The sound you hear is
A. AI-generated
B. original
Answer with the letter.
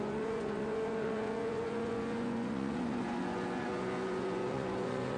A